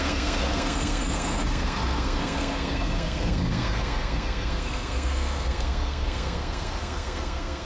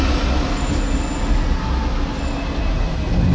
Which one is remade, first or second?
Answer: first